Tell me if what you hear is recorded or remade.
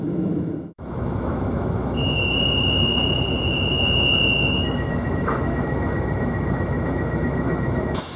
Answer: remade